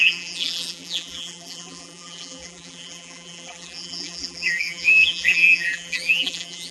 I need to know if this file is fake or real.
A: fake